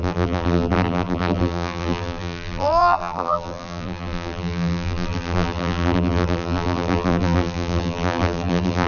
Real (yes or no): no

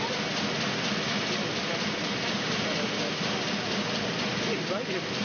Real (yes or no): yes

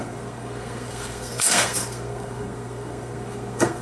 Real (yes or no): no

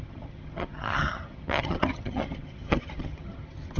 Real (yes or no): no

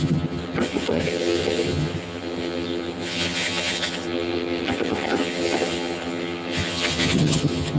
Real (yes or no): no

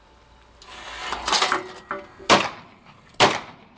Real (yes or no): yes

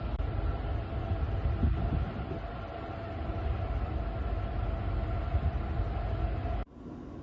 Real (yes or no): yes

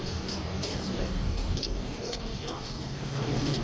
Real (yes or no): no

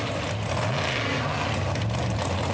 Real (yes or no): yes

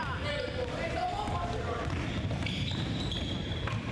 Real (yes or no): yes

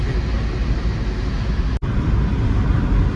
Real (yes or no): yes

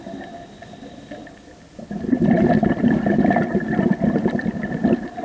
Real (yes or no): yes